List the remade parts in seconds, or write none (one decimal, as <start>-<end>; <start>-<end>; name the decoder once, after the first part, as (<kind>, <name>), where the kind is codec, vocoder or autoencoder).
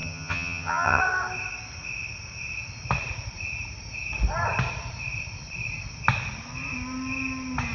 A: 0.0-1.0 (vocoder, HiFi-GAN)